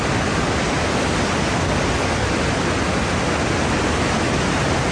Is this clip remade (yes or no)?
no